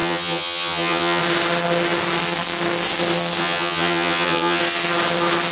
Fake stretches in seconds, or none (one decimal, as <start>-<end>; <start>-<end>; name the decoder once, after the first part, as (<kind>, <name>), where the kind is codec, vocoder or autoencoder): 0.0-1.2 (vocoder, HiFi-GAN); 3.4-4.6

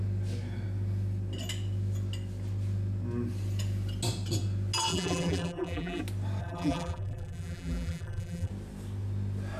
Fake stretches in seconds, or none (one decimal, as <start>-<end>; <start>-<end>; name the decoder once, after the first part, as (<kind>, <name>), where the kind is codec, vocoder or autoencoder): 4.9-6.0 (vocoder, BigVGAN v2); 6.4-8.5

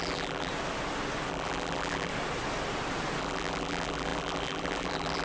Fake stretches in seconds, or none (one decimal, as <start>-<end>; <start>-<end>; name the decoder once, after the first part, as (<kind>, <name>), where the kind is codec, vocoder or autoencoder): 0.0-0.5 (vocoder, BigVGAN v2); 1.3-2.1; 3.2-5.2

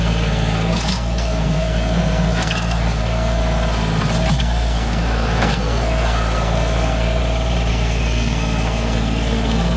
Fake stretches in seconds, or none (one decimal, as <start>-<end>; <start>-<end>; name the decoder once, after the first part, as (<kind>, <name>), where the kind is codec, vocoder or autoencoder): 0.0-3.4 (codec, SNAC); 4.4-7.2; 7.7-9.8

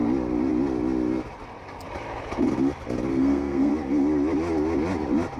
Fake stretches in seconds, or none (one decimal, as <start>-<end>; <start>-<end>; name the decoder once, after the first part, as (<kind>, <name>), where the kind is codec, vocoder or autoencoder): 3.1-3.7 (codec, SNAC)

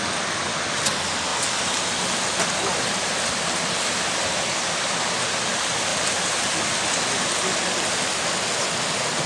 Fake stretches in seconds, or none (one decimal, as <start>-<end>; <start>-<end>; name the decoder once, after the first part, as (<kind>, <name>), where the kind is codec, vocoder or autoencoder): 5.9-6.5 (vocoder, BigVGAN v2)